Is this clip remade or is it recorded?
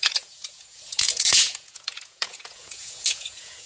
remade